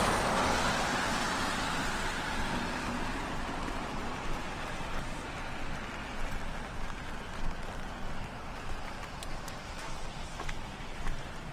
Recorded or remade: recorded